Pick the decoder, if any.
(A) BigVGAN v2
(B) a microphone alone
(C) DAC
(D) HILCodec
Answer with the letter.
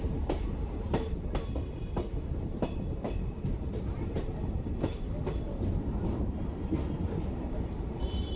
A